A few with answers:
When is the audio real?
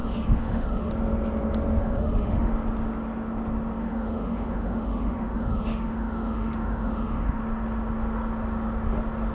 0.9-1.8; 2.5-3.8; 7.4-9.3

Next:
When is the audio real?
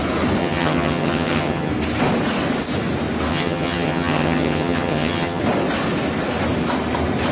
0.0-0.4; 1.7-3.3; 5.4-7.3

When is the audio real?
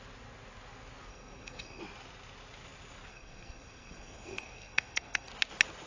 0.0-1.1; 1.8-3.1; 5.3-5.9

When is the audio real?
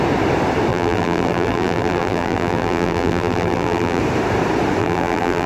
0.0-0.7; 4.0-4.8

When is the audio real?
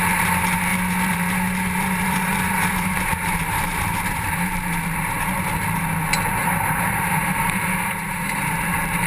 0.0-0.7; 4.6-6.4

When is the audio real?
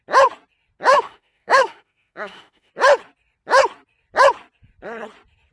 0.0-0.9; 2.7-5.5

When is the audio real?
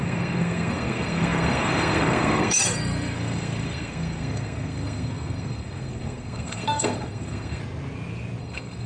7.6-8.4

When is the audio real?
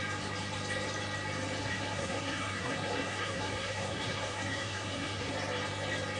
0.0-1.6; 5.3-6.2